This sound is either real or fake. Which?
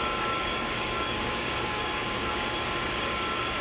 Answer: fake